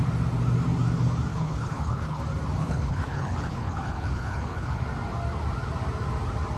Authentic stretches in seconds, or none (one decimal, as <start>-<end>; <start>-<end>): 0.0-1.3; 2.2-2.6; 4.8-6.6

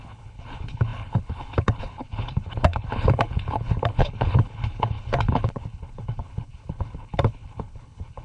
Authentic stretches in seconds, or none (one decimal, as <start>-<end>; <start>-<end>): none

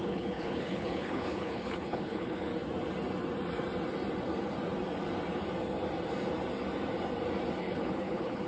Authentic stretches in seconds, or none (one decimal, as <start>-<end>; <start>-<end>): 2.5-7.6